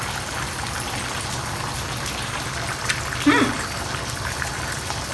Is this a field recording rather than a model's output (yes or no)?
yes